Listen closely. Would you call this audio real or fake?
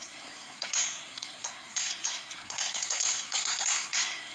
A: fake